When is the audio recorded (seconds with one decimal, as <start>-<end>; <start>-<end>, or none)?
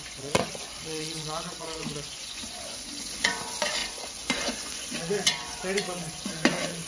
none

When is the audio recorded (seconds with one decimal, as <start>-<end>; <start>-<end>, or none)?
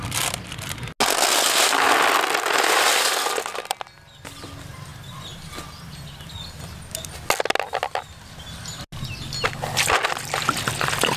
0.0-11.2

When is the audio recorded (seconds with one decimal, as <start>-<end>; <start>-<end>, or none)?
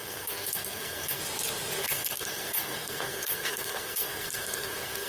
1.2-1.8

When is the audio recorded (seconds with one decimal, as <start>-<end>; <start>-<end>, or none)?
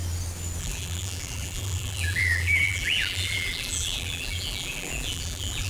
0.0-0.6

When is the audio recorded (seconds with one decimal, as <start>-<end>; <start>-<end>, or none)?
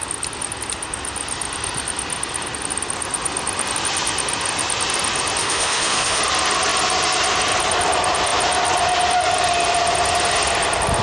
0.0-5.4; 6.2-11.0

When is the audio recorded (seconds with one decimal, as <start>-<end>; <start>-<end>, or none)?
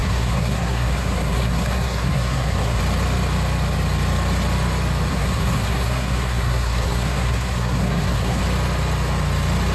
2.8-5.1; 8.4-9.7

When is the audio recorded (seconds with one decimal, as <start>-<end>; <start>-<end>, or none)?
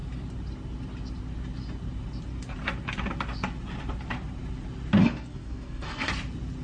0.0-5.0; 6.1-6.6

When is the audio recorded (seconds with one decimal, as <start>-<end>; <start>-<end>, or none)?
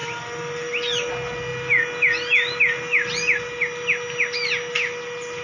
0.0-5.4